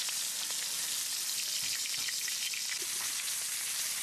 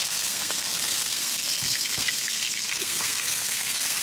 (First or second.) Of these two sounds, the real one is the first